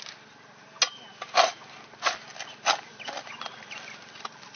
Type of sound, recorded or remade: recorded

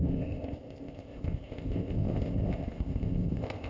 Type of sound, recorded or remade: remade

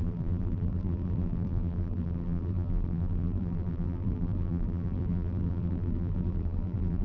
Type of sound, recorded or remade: remade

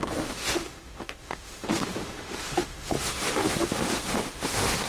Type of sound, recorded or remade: remade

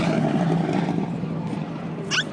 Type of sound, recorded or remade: recorded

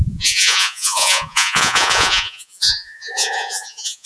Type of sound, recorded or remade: remade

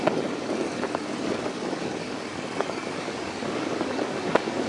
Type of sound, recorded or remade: remade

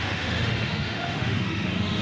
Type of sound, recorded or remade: remade